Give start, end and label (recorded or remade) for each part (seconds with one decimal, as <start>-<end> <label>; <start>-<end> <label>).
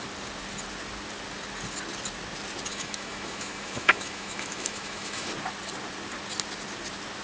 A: 0.0-2.7 recorded; 2.7-5.3 remade; 5.3-7.2 recorded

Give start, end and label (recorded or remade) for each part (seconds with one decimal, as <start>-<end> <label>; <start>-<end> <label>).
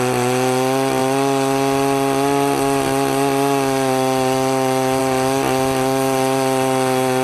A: 0.0-7.2 recorded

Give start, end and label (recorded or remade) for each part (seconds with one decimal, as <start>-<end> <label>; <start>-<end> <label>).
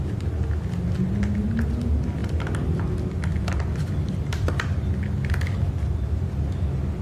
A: 0.0-2.2 recorded; 2.2-2.8 remade; 2.8-7.0 recorded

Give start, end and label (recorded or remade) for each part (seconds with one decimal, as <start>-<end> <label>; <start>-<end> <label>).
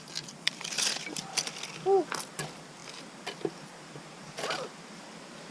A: 0.0-5.5 recorded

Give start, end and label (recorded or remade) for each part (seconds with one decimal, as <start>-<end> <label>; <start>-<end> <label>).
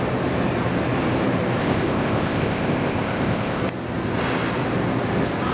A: 0.0-1.6 recorded; 1.6-3.6 remade; 3.6-5.5 recorded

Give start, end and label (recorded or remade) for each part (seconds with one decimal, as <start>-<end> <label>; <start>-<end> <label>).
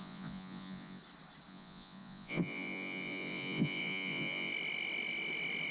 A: 0.0-1.0 remade; 1.0-1.5 recorded; 1.5-4.5 remade; 4.5-5.7 recorded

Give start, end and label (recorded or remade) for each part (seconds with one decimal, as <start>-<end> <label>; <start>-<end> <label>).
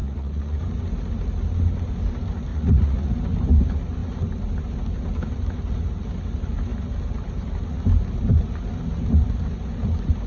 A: 0.0-0.6 remade; 0.6-2.5 recorded; 2.5-3.1 remade; 3.1-10.3 recorded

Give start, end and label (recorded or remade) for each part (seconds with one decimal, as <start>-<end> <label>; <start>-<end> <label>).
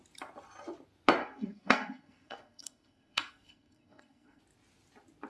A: 0.0-1.2 recorded; 1.2-4.4 remade; 4.4-5.3 recorded